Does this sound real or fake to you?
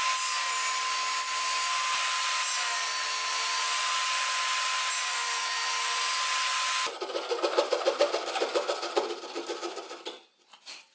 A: real